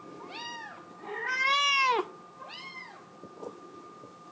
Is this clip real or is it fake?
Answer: real